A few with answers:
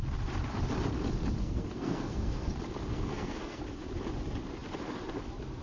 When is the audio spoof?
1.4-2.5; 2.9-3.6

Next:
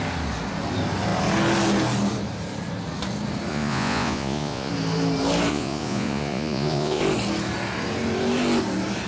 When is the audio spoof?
3.5-4.7; 5.5-7.0

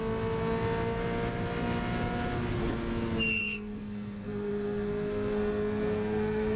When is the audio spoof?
3.4-6.6

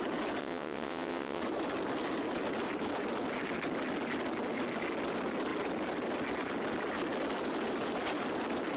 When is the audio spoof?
0.4-1.4

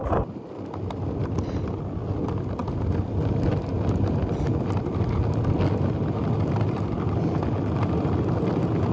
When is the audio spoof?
none

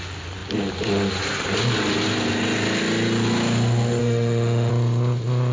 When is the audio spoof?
4.0-4.7